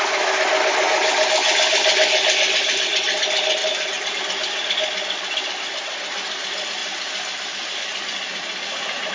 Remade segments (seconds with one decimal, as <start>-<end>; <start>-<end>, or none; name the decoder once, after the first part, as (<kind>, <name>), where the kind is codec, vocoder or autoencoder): 3.6-4.2 (vocoder, BigVGAN v2); 6.8-9.1